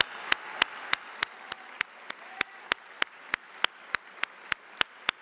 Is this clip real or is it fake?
real